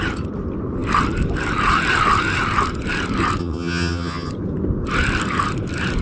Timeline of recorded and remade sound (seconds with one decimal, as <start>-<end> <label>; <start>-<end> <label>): 0.0-3.4 recorded; 3.4-4.3 remade; 4.3-6.0 recorded